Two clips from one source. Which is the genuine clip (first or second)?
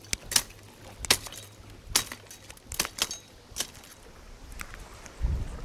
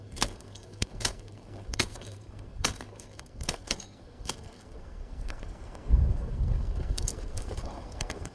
first